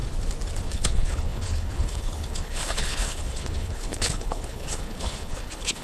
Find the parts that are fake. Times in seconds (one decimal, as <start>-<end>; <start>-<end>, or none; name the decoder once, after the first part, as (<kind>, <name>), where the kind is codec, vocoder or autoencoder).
0.6-5.8 (codec, HILCodec)